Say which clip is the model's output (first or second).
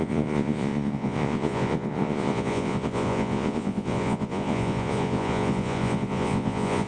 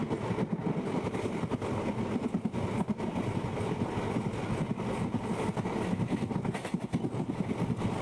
first